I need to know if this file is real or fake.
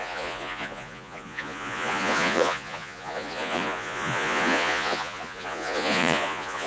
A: fake